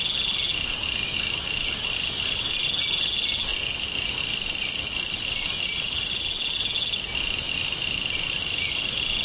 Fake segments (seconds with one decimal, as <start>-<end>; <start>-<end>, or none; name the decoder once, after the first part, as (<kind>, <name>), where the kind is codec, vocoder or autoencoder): none